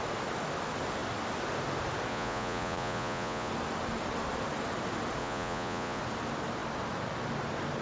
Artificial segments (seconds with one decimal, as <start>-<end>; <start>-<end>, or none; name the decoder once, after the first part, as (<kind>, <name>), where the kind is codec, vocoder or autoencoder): 2.1-3.5 (vocoder, Vocos); 5.2-6.0